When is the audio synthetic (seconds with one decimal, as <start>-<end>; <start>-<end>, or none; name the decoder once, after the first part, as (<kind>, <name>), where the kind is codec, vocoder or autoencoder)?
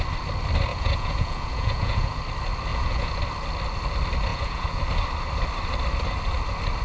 0.7-2.2 (vocoder, Vocos); 2.7-3.2; 4.3-4.8